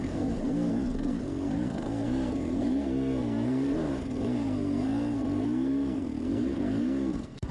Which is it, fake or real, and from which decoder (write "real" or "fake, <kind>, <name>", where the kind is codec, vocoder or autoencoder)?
fake, codec, SNAC